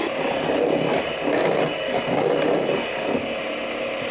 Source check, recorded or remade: recorded